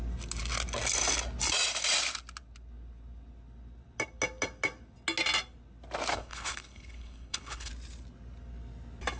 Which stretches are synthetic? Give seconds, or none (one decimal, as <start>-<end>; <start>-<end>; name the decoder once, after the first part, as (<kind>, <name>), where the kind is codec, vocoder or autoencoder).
6.1-7.7 (codec, HILCodec)

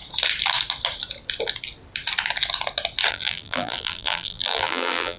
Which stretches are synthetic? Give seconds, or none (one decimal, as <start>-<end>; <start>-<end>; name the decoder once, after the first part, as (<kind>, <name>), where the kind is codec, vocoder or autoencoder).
3.1-5.2 (vocoder, BigVGAN v2)

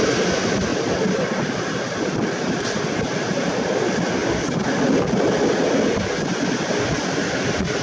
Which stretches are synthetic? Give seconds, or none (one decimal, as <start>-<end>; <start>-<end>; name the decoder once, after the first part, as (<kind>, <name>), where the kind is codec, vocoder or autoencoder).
none

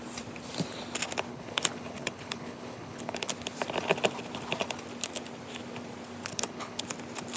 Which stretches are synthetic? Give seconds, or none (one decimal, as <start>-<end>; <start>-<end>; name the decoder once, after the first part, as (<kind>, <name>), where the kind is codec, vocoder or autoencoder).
1.3-3.3 (codec, HILCodec); 6.3-6.8

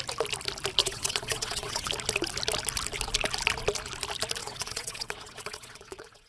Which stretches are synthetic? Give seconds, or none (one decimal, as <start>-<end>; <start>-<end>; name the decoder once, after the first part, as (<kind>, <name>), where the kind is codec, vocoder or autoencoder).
0.8-1.9 (vocoder, WaveNeXt); 4.4-6.3

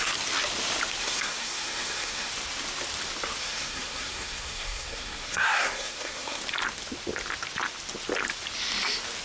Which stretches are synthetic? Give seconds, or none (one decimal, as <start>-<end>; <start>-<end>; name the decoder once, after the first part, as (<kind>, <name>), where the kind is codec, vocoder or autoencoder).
1.0-2.3 (codec, SNAC); 3.4-6.4

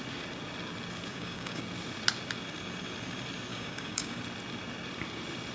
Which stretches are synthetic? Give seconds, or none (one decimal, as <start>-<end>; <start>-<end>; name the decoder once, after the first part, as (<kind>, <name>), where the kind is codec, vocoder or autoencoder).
1.1-1.6 (codec, DAC); 3.5-4.2

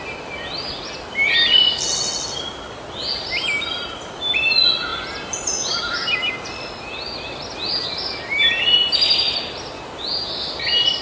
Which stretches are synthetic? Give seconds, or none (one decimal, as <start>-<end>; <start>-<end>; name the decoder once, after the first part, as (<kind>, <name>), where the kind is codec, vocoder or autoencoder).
none